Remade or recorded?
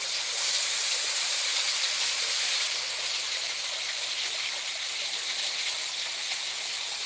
remade